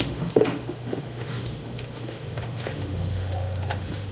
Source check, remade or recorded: remade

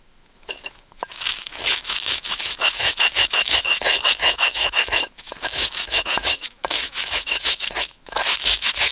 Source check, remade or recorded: remade